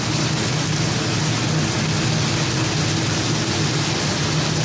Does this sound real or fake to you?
real